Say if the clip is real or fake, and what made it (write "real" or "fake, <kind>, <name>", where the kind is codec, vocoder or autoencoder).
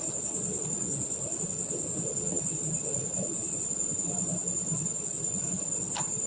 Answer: real